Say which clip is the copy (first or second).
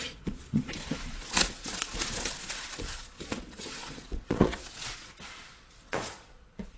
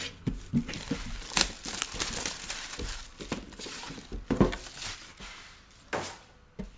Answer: first